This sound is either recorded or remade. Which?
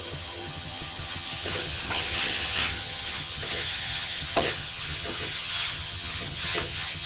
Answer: remade